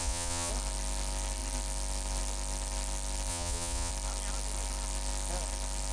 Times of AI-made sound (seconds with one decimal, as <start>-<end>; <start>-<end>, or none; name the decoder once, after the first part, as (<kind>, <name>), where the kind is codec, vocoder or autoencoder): 0.0-0.5 (vocoder, Vocos); 3.3-3.9